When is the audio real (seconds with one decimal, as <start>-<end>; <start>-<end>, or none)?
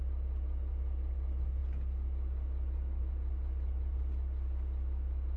0.0-5.4